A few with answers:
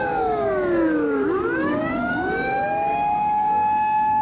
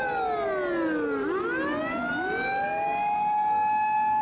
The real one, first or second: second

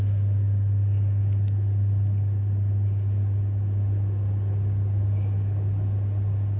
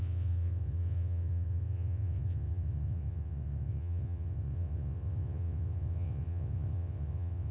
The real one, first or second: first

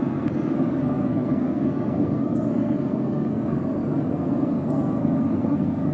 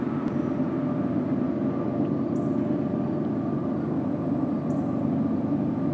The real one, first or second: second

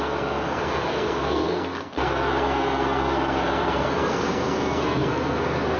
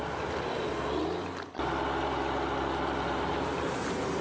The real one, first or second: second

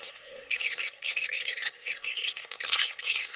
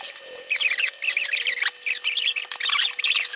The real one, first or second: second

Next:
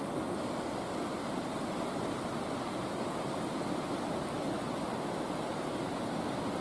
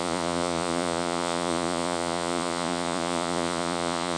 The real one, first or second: first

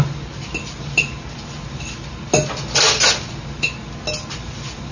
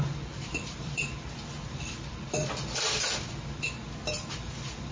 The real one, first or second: first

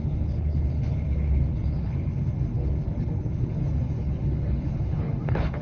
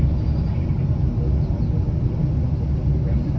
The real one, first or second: second